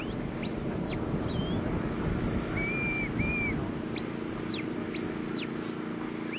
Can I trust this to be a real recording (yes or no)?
yes